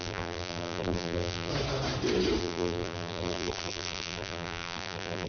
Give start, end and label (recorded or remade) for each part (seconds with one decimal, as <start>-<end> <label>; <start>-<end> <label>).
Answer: 0.0-1.5 remade; 1.5-2.4 recorded; 2.4-5.3 remade